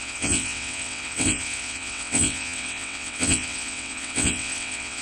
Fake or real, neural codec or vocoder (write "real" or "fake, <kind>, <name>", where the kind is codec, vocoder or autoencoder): fake, vocoder, WaveNeXt